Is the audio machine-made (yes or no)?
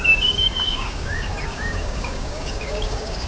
yes